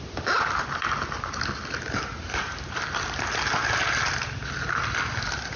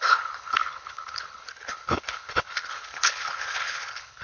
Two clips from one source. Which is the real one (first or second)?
first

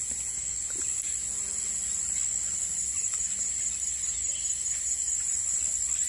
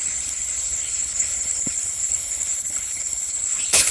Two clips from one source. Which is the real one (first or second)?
first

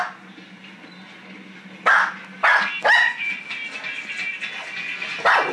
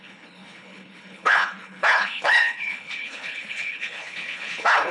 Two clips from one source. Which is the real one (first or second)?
first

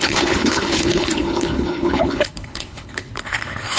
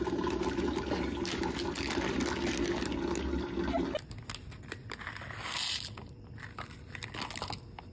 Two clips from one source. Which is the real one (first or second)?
second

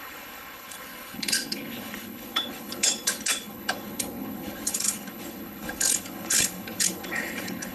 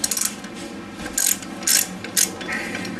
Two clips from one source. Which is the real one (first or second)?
second